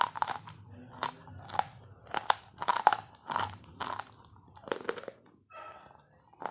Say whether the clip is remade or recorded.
recorded